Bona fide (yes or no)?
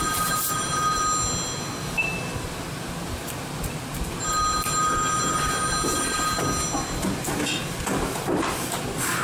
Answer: yes